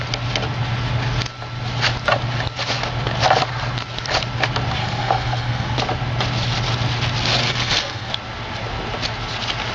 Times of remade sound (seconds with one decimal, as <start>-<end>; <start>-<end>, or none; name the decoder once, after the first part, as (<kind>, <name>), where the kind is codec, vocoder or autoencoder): 4.8-5.8 (codec, SNAC); 7.4-8.1